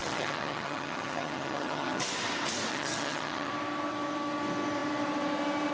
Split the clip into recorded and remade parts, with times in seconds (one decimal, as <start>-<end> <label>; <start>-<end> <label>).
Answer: 0.0-2.0 remade; 2.0-2.7 recorded; 2.7-3.5 remade; 3.5-5.7 recorded